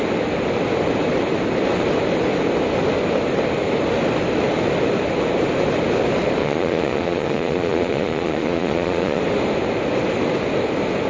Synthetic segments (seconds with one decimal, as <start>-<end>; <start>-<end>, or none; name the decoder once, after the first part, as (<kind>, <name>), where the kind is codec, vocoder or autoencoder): 6.4-9.2 (vocoder, Vocos)